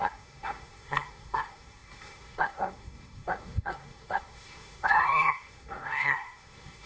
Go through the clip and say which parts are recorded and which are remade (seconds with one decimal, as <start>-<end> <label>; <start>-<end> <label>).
0.0-6.9 remade